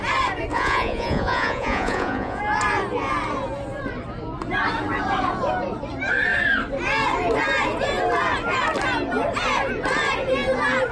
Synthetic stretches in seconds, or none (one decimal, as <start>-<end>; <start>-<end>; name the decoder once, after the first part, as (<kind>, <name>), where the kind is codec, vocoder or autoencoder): 0.5-2.4 (vocoder, Vocos)